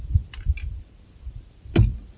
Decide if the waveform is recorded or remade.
recorded